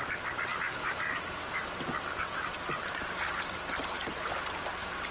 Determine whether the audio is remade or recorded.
remade